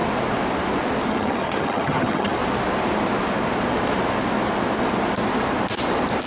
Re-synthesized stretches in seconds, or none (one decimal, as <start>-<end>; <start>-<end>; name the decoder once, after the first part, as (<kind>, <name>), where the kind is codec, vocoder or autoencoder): 1.1-2.4 (vocoder, HiFi-GAN)